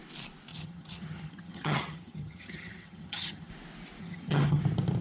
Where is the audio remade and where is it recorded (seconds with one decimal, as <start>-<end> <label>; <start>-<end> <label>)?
0.0-0.5 recorded; 0.5-3.5 remade; 3.5-4.0 recorded; 4.0-4.6 remade; 4.6-5.0 recorded